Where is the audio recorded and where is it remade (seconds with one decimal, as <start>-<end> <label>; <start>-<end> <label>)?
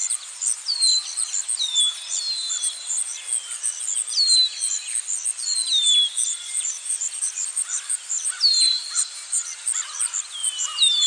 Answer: 0.0-2.4 recorded; 2.4-3.0 remade; 3.0-6.3 recorded; 6.3-9.6 remade; 9.6-10.4 recorded; 10.4-11.1 remade